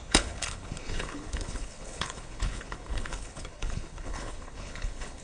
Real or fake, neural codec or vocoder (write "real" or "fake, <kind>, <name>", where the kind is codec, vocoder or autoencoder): fake, codec, HILCodec